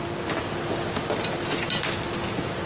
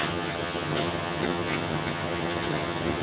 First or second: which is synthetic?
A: second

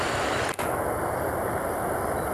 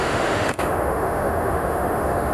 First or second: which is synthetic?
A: second